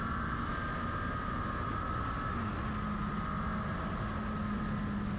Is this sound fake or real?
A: real